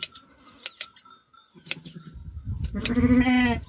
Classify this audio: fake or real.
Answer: real